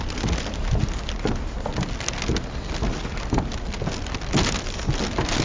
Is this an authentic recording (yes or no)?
yes